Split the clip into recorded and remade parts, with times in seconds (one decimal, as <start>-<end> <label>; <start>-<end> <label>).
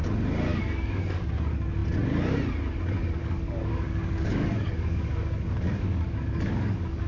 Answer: 0.0-0.5 recorded; 0.5-1.3 remade; 1.3-3.2 recorded; 3.2-7.1 remade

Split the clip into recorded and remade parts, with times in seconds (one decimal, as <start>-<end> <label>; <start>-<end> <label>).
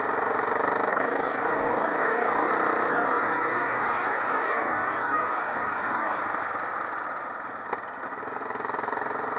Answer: 0.0-0.9 recorded; 0.9-2.5 remade; 2.5-2.9 recorded; 2.9-6.2 remade; 6.2-9.4 recorded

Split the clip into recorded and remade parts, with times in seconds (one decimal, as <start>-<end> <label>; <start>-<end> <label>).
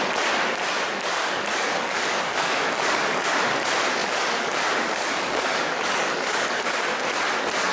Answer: 0.0-1.1 recorded; 1.1-3.4 remade; 3.4-4.0 recorded; 4.0-6.7 remade; 6.7-7.7 recorded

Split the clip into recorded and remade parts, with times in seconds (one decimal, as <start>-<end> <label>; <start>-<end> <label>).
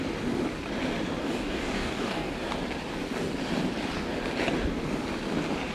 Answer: 0.0-1.2 recorded; 1.2-2.3 remade; 2.3-5.7 recorded